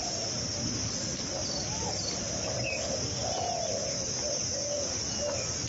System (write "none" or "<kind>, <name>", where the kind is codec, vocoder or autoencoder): none